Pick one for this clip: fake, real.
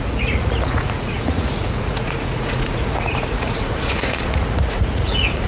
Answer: fake